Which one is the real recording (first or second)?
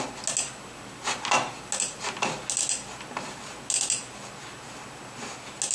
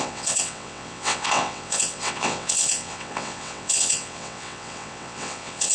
first